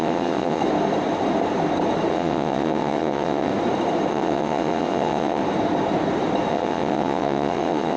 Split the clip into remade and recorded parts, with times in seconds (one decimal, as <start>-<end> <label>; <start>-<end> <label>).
0.0-0.6 remade; 0.6-2.1 recorded; 2.1-3.5 remade; 3.5-4.1 recorded; 4.1-5.4 remade; 5.4-6.5 recorded; 6.5-8.0 remade